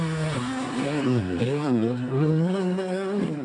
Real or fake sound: fake